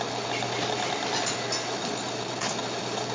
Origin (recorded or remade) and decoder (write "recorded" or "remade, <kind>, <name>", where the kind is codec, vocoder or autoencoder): recorded